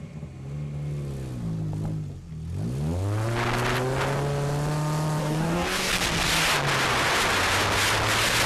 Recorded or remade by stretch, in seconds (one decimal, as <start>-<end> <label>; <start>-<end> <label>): 0.0-5.2 recorded; 5.2-5.9 remade; 5.9-8.5 recorded